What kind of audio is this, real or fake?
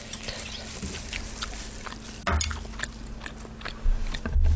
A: real